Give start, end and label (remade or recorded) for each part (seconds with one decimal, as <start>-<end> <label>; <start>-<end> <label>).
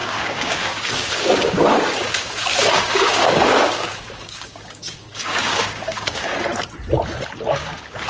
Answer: 0.0-6.3 remade; 6.3-7.5 recorded; 7.5-8.1 remade